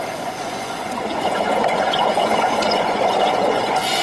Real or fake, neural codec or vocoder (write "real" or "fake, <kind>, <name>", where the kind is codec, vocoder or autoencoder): fake, vocoder, Vocos